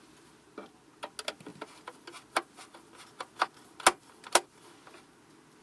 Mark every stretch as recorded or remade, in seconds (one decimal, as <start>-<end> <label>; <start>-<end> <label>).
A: 0.0-5.6 recorded